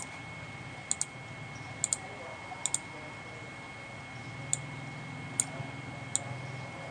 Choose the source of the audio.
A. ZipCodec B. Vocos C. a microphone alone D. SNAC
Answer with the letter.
C